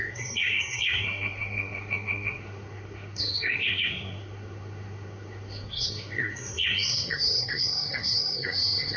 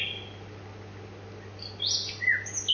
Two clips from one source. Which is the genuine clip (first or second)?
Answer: second